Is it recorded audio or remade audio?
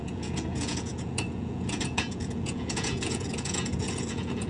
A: remade